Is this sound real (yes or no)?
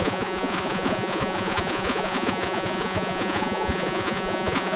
no